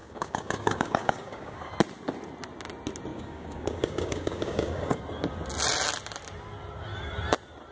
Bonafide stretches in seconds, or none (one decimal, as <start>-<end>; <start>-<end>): 1.7-3.1; 5.0-7.7